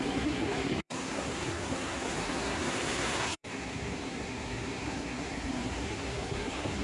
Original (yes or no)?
no